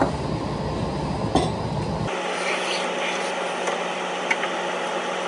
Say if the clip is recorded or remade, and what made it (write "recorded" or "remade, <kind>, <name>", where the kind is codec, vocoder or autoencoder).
recorded